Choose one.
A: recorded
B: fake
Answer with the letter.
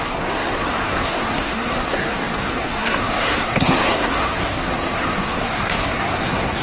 B